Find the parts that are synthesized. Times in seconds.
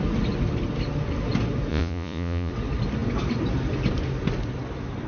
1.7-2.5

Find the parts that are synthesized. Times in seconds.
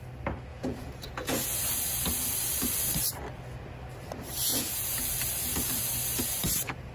0.5-1.6; 4.5-5.1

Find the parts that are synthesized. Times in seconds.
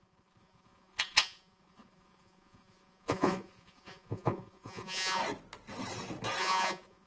0.0-5.2; 6.4-7.1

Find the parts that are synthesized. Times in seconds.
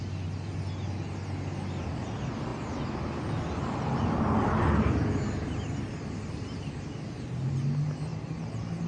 none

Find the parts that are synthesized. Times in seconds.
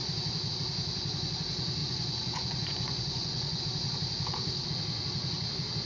1.8-3.6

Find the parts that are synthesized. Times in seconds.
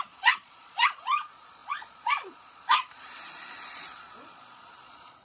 0.0-5.2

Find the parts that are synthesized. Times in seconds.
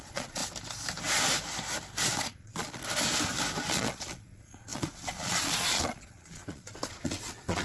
0.0-0.4; 2.2-2.8; 3.7-7.6